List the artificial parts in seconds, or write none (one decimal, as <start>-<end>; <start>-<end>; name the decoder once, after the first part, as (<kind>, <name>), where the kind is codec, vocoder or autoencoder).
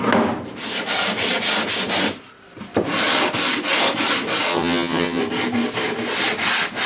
4.5-5.2 (vocoder, HiFi-GAN)